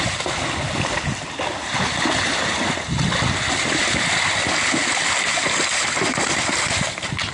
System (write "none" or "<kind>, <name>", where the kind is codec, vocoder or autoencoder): none